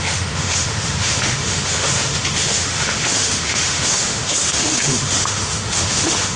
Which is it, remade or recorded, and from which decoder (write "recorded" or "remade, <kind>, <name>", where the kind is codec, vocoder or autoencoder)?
remade, autoencoder, DAC-VAE